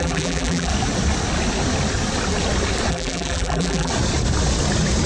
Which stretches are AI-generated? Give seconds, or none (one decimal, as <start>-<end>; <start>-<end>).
0.0-0.7; 2.9-3.9